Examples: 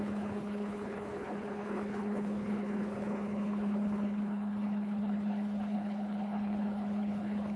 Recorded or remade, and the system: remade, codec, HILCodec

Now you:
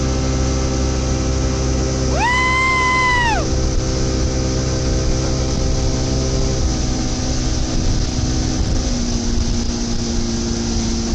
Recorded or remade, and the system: recorded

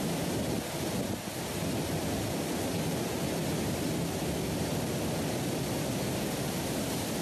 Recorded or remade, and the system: recorded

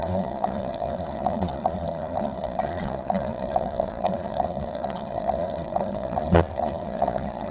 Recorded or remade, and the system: remade, vocoder, Vocos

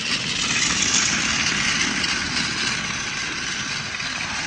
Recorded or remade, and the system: recorded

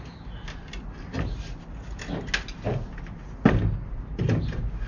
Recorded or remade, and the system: recorded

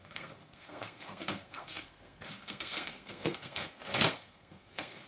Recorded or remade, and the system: remade, codec, SNAC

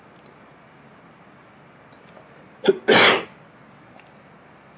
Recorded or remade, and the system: recorded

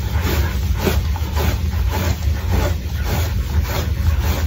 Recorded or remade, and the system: recorded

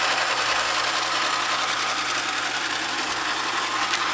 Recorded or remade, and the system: recorded